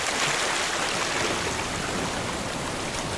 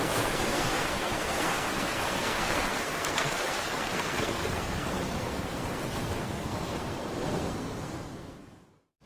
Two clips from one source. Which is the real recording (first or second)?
first